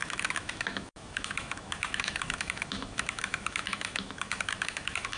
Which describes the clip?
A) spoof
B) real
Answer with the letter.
A